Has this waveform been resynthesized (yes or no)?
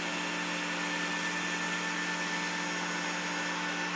no